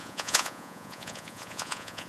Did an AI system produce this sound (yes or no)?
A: yes